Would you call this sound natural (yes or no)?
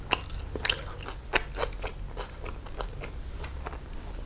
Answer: yes